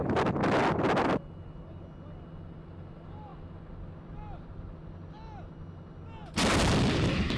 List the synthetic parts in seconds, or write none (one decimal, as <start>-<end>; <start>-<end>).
none